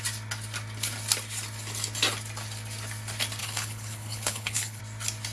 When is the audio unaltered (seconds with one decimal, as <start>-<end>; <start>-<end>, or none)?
0.0-3.4; 4.8-5.3